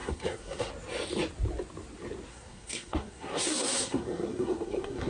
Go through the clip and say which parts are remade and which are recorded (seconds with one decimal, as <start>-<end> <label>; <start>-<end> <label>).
0.0-0.7 remade; 0.7-2.3 recorded; 2.3-5.1 remade